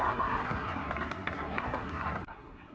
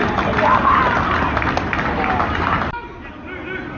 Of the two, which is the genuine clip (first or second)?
second